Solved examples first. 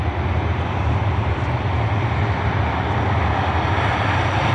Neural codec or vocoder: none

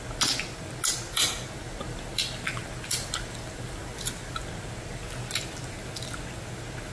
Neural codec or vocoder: none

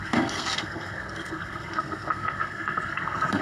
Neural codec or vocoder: codec, SNAC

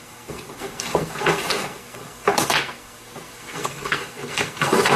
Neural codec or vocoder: codec, SNAC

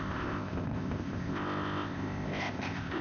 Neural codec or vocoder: codec, ZipCodec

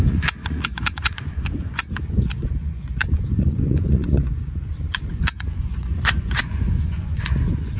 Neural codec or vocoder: vocoder, Vocos